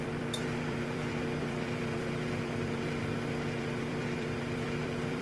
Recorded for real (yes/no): no